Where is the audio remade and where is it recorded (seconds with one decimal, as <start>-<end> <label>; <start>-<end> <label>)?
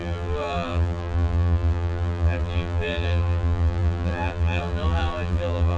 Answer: 0.0-5.8 remade